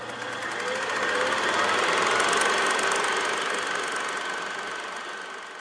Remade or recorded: recorded